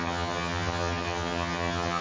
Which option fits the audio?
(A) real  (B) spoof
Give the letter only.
B